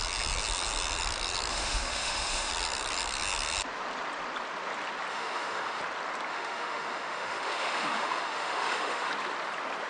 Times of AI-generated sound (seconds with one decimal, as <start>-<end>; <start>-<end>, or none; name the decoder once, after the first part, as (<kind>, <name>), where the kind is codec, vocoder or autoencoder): 1.5-2.5 (autoencoder, DAC-VAE); 5.1-5.8; 6.3-9.1